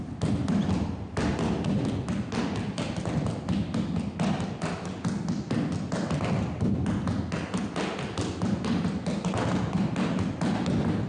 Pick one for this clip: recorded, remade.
recorded